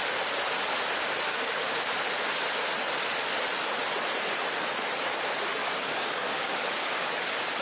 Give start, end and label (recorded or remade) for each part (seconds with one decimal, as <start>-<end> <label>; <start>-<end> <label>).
0.0-1.3 recorded; 1.3-1.9 remade; 1.9-5.6 recorded; 5.6-7.6 remade